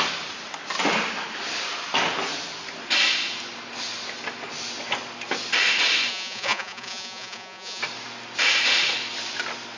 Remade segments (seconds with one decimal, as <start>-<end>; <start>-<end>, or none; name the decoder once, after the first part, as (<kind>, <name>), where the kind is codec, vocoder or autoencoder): 6.1-7.8 (vocoder, Vocos)